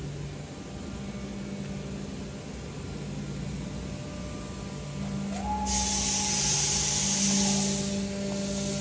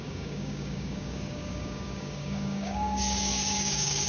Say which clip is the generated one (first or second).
second